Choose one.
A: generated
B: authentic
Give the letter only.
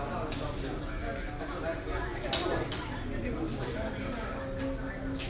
B